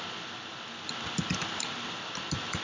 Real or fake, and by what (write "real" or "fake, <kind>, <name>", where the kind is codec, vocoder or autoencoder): real